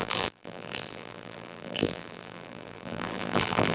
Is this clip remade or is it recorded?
remade